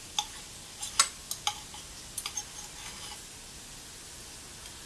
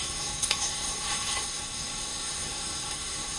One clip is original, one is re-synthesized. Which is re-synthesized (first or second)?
second